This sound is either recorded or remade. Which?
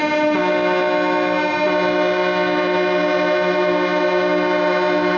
recorded